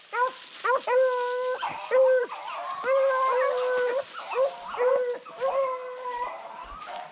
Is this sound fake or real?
real